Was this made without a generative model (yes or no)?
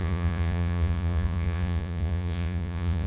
no